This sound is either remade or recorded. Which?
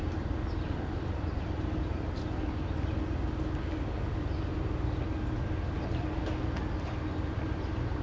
recorded